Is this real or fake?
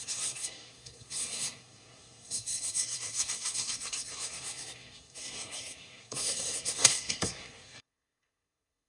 fake